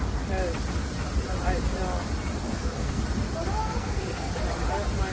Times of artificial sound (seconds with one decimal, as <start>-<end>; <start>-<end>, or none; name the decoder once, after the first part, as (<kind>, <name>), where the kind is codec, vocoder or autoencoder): 2.4-3.0 (codec, SNAC); 3.6-4.3